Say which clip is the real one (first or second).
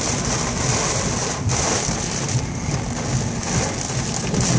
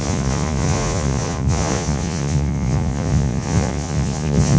first